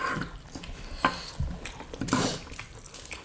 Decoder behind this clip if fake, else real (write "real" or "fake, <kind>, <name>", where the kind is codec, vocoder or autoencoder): real